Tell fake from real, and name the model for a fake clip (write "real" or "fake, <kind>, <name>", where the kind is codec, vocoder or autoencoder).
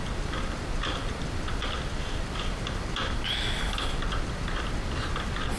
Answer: real